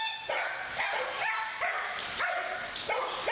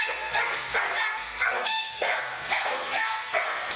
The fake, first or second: second